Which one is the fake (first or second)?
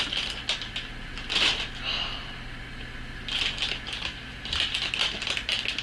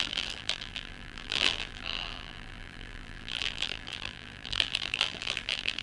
second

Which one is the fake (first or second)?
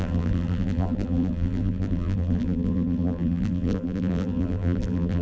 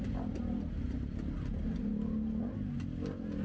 first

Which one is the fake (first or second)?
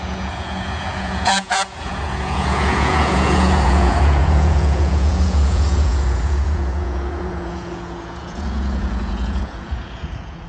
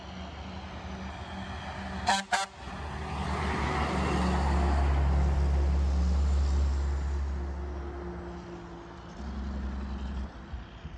first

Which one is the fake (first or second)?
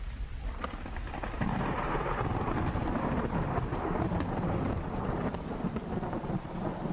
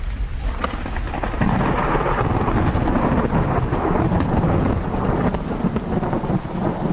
first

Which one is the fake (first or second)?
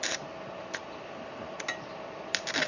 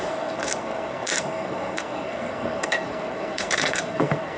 second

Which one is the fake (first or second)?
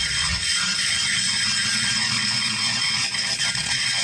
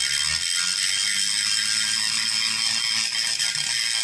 first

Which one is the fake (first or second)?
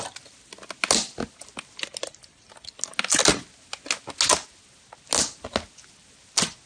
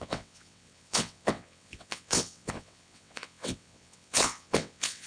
second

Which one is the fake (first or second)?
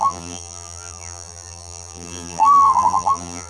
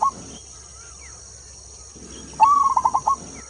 first